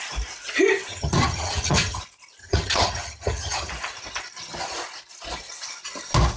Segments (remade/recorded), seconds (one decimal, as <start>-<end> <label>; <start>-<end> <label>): 0.0-0.9 recorded; 0.9-2.0 remade; 2.0-2.4 recorded; 2.4-3.7 remade; 3.7-6.4 recorded